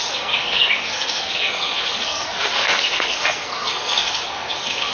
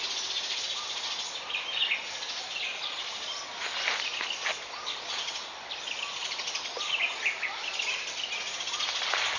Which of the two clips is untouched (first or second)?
second